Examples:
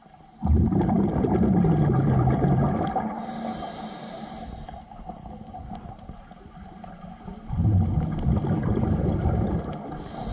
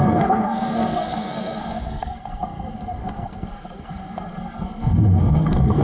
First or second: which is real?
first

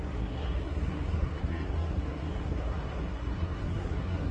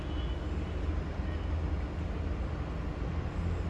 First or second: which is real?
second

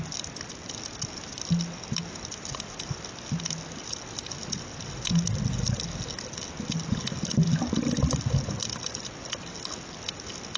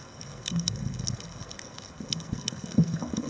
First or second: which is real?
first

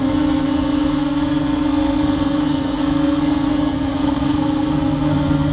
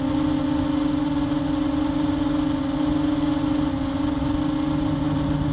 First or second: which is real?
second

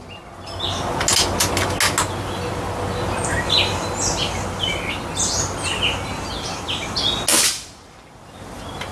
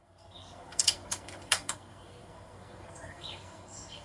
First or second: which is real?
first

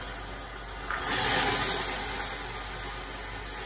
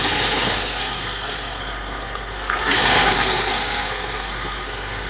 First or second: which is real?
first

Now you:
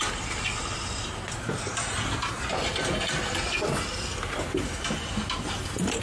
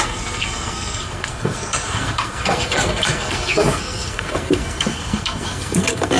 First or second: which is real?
first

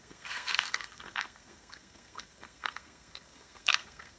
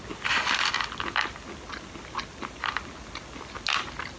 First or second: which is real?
second